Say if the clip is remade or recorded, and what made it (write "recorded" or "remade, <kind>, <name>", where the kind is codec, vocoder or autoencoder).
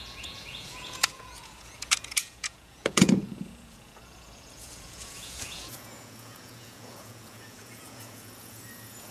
remade, vocoder, Vocos